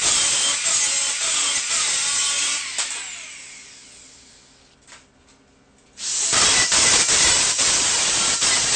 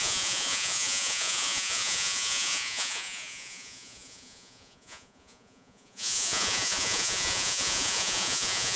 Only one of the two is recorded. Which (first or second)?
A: first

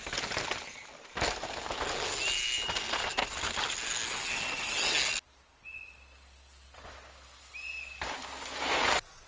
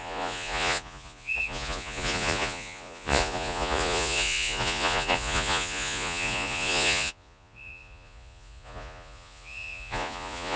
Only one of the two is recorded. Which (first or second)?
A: first